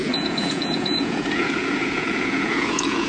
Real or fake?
fake